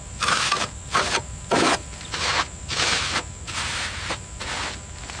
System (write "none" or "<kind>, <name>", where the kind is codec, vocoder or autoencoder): none